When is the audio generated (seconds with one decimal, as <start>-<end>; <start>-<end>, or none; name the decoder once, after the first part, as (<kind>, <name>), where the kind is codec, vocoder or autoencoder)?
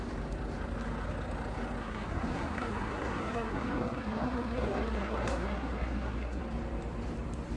1.8-6.4 (codec, SNAC)